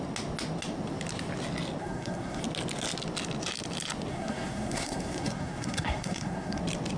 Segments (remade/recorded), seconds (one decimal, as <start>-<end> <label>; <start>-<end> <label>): 0.0-1.8 recorded; 1.8-2.4 remade; 2.4-4.1 recorded; 4.1-6.6 remade; 6.6-7.0 recorded